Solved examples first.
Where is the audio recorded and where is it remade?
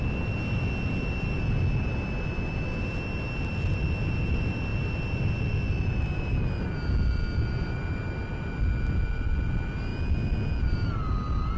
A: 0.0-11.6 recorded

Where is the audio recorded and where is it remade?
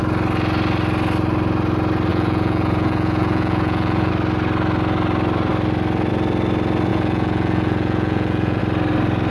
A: 0.0-2.1 recorded; 2.1-4.1 remade; 4.1-6.9 recorded; 6.9-8.6 remade; 8.6-9.3 recorded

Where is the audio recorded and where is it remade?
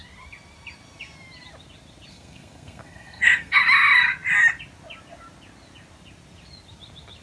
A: 0.0-2.1 recorded; 2.1-3.6 remade; 3.6-7.2 recorded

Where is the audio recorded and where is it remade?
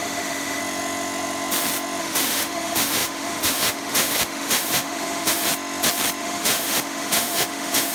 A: 0.0-0.6 remade; 0.6-2.0 recorded; 2.0-5.5 remade; 5.5-6.2 recorded; 6.2-7.9 remade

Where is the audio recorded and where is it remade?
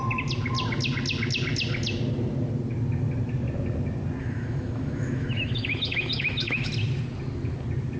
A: 0.0-4.2 recorded; 4.2-6.7 remade; 6.7-8.0 recorded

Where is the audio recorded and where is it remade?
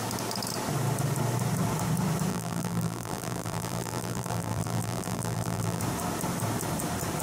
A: 0.0-2.3 recorded; 2.3-5.8 remade; 5.8-7.2 recorded